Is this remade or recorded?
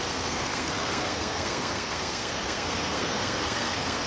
remade